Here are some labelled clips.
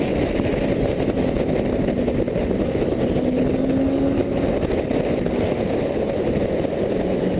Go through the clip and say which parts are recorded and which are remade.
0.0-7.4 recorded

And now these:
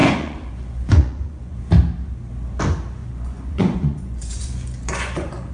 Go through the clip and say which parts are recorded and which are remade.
0.0-1.6 remade; 1.6-3.0 recorded; 3.0-5.5 remade

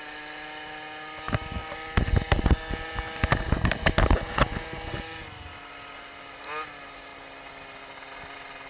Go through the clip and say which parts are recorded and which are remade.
0.0-8.7 recorded

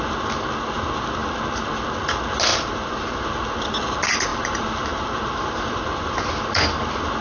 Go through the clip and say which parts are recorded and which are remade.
0.0-2.5 recorded; 2.5-3.2 remade; 3.2-4.3 recorded; 4.3-6.4 remade; 6.4-7.2 recorded

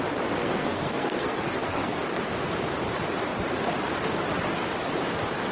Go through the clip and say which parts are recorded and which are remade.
0.0-0.4 recorded; 0.4-2.0 remade; 2.0-5.5 recorded

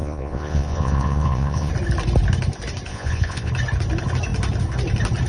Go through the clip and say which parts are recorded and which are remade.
0.0-1.7 remade; 1.7-2.9 recorded; 2.9-3.5 remade; 3.5-5.3 recorded

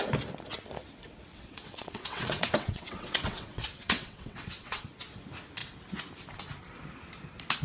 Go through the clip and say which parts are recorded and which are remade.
0.0-1.3 recorded; 1.3-4.8 remade; 4.8-7.6 recorded

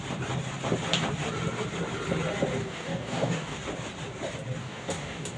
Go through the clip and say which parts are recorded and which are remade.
0.0-2.6 recorded; 2.6-3.6 remade; 3.6-4.6 recorded; 4.6-5.4 remade